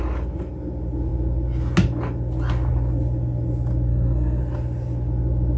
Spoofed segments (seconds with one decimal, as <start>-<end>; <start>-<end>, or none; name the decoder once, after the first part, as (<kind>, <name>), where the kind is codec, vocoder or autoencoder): 3.9-4.4 (codec, SNAC)